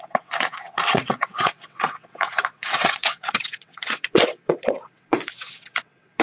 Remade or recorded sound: remade